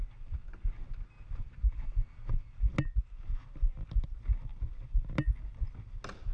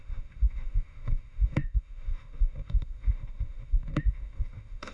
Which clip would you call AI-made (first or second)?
second